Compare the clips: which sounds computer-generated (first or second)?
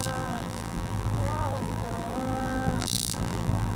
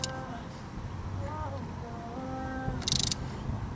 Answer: first